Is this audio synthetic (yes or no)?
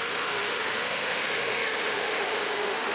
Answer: yes